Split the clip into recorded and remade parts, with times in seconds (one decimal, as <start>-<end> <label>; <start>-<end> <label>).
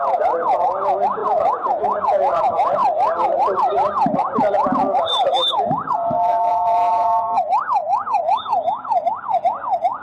0.0-2.8 remade; 2.8-5.7 recorded; 5.7-10.0 remade